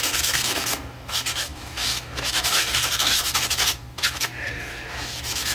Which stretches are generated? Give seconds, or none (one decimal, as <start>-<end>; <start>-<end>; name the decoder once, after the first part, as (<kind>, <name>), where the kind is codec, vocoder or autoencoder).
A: 0.0-5.5 (codec, DAC)